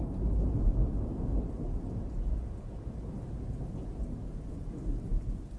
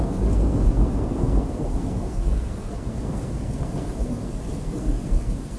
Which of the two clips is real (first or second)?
first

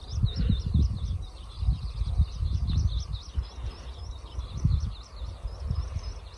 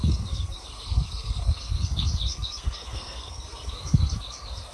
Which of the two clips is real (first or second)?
first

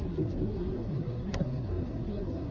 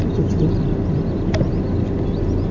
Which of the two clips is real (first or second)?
second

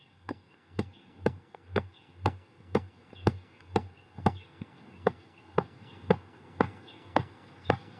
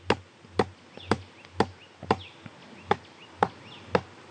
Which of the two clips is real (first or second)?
second